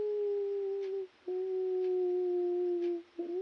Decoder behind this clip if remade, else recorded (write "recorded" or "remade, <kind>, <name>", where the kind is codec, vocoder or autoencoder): recorded